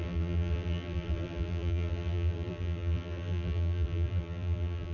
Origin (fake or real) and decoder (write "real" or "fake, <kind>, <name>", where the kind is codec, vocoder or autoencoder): fake, vocoder, BigVGAN v2